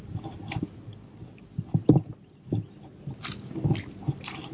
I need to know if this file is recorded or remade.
recorded